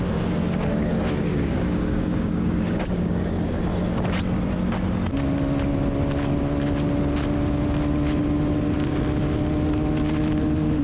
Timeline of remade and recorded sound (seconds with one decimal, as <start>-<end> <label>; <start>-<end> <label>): 0.0-1.3 recorded; 1.3-3.6 remade; 3.6-10.8 recorded